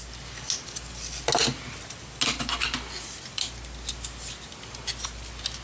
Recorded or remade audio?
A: recorded